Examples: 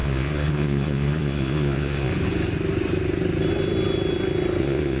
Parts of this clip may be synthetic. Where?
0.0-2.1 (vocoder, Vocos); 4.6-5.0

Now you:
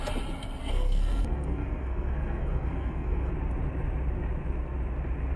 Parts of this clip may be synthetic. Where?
0.6-3.3 (codec, SNAC)

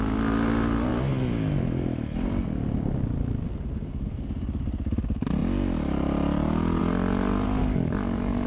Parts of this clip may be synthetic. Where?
7.6-8.5 (codec, DAC)

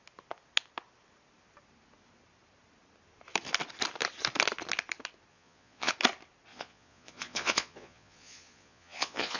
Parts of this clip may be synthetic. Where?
5.3-5.9 (vocoder, Vocos); 6.5-9.4

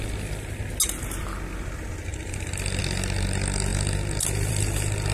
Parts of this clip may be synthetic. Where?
none

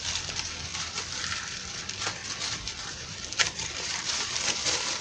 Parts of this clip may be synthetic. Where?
0.7-1.8 (vocoder, BigVGAN v2)

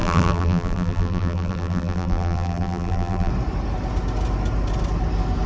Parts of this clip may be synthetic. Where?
0.0-3.3 (vocoder, BigVGAN v2)

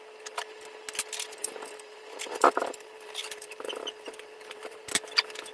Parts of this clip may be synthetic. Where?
1.4-4.7 (vocoder, BigVGAN v2)